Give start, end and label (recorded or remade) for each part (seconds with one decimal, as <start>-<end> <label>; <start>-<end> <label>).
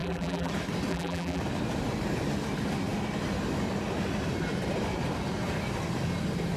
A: 0.0-0.5 remade; 0.5-0.9 recorded; 0.9-1.4 remade; 1.4-6.6 recorded